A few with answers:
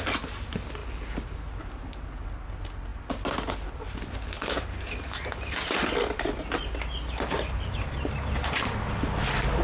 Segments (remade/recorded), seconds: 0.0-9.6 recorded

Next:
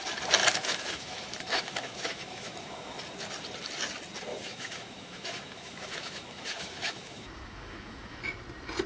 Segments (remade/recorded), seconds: 0.0-0.4 recorded; 0.4-3.0 remade; 3.0-4.3 recorded; 4.3-8.2 remade; 8.2-8.9 recorded

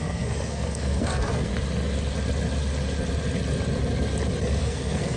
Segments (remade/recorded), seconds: 0.0-1.5 remade; 1.5-4.6 recorded; 4.6-5.2 remade

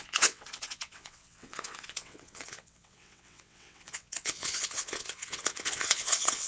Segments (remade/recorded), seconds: 0.0-6.5 remade

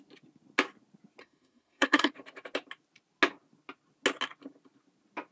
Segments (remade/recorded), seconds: 0.0-1.2 recorded; 1.2-2.1 remade; 2.1-5.3 recorded

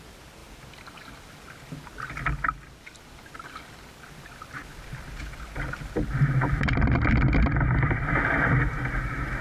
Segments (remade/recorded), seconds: 0.0-9.4 recorded

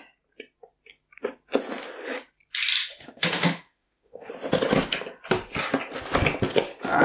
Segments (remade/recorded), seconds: 0.0-2.9 recorded; 2.9-4.3 remade; 4.3-7.0 recorded

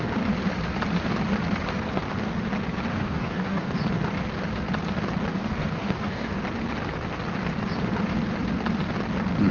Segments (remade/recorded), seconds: 0.0-2.9 recorded; 2.9-3.7 remade; 3.7-5.3 recorded; 5.3-6.4 remade; 6.4-9.5 recorded